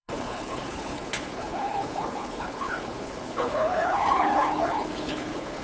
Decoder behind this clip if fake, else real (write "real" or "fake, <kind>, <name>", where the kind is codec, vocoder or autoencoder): fake, codec, HILCodec